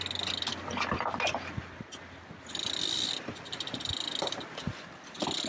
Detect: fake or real real